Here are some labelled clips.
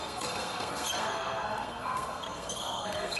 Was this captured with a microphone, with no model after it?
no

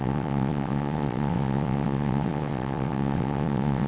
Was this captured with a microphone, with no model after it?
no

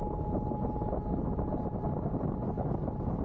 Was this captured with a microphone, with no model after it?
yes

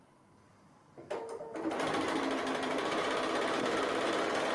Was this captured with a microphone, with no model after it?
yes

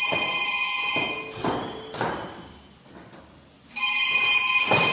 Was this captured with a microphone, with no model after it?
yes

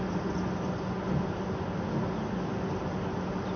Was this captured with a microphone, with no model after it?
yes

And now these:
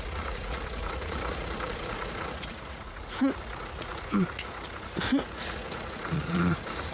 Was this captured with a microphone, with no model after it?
no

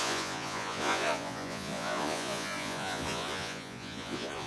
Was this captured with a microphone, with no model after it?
no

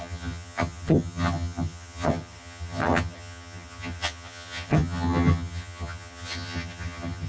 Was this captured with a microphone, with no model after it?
no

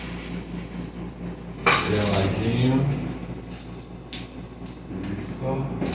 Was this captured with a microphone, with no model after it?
yes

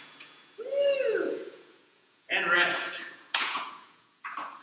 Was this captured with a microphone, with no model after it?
no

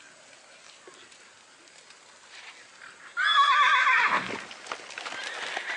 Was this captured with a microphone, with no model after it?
yes